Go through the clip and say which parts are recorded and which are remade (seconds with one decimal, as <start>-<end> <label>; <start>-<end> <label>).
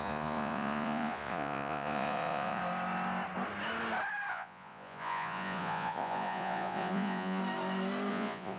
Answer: 0.0-2.6 remade; 2.6-4.3 recorded; 4.3-7.4 remade; 7.4-8.1 recorded; 8.1-8.6 remade